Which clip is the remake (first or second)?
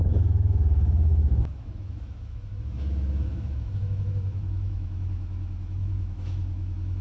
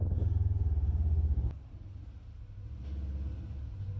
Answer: first